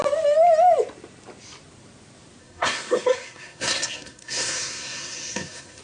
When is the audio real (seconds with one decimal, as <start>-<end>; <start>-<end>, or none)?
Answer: 0.0-2.4